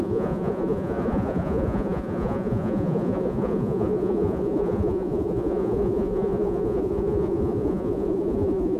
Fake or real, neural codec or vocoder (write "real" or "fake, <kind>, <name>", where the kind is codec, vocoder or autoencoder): fake, vocoder, Vocos